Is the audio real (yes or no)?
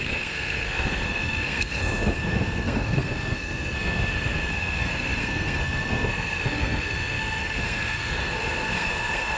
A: no